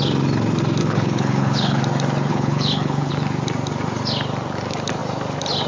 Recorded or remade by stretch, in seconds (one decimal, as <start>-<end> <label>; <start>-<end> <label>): 0.0-0.8 recorded; 0.8-1.8 remade; 1.8-2.3 recorded; 2.3-3.1 remade; 3.1-5.7 recorded